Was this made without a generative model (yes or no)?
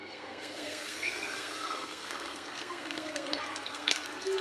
no